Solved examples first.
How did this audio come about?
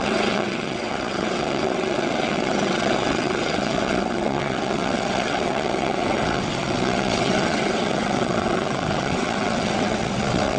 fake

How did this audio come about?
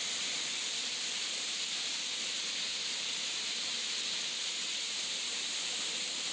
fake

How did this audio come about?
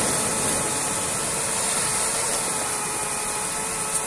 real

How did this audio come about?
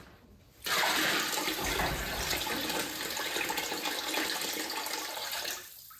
real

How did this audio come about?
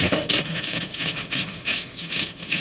fake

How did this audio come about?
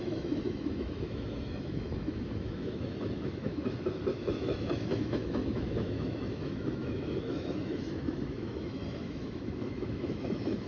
fake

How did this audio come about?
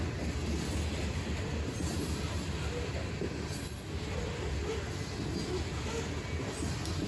real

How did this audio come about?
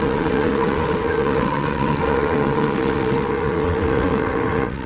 fake